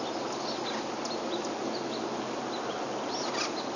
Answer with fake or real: real